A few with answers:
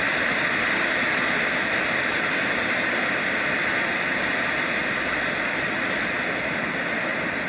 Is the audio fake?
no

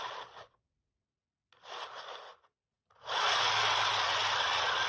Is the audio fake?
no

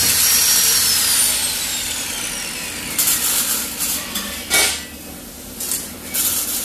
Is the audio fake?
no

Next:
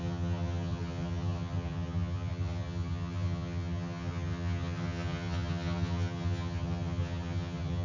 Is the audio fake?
yes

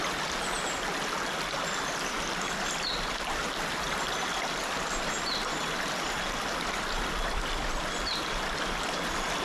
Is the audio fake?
no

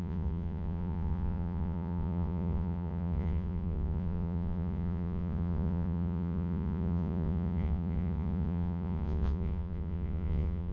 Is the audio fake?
yes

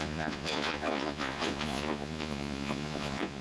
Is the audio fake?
yes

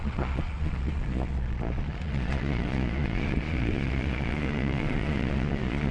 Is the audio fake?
yes